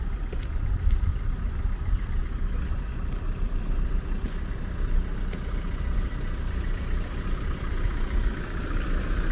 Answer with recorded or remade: remade